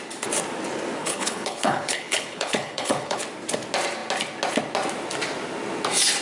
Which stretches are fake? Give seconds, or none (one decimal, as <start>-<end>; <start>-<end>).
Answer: 1.0-3.2